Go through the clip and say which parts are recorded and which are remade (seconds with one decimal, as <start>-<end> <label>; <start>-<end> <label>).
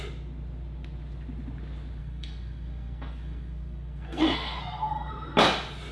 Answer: 0.0-2.0 recorded; 2.0-5.1 remade; 5.1-5.9 recorded